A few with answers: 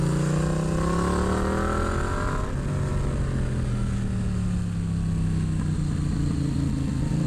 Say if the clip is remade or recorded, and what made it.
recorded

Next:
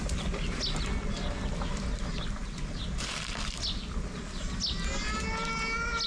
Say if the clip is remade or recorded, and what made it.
recorded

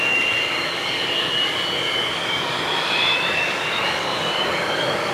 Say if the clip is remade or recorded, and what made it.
remade, codec, DAC